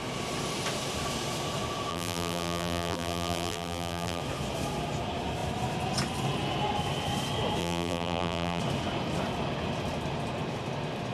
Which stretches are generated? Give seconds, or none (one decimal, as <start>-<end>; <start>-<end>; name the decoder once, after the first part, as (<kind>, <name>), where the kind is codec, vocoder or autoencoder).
1.9-4.2 (vocoder, BigVGAN v2); 7.6-8.6